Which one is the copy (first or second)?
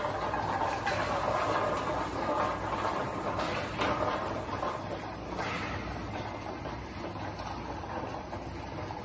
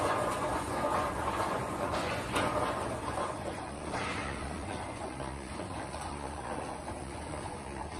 second